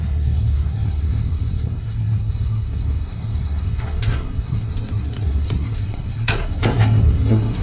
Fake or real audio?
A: fake